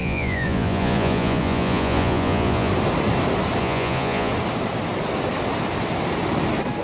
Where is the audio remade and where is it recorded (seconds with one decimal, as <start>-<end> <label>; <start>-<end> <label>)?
0.0-2.7 remade; 2.7-3.6 recorded; 3.6-4.3 remade; 4.3-6.8 recorded